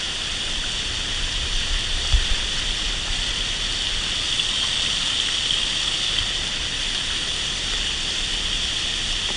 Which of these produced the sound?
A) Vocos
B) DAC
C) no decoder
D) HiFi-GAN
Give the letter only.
C